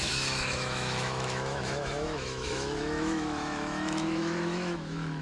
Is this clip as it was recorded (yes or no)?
no